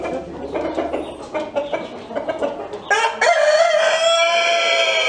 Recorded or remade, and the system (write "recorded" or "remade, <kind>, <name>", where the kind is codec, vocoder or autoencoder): recorded